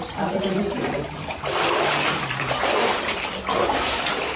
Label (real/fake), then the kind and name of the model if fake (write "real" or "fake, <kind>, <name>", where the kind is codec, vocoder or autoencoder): fake, vocoder, BigVGAN v2